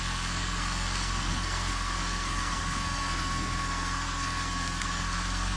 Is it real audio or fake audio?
fake